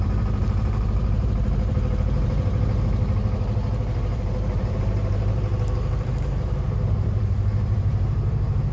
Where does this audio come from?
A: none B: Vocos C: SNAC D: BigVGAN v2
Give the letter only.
D